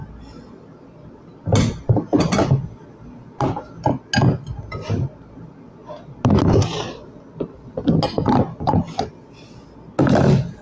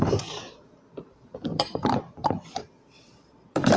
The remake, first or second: second